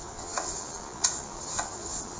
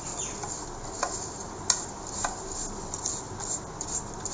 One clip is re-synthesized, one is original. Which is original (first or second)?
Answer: second